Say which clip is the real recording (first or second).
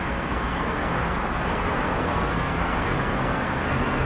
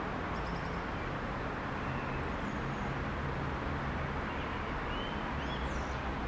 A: second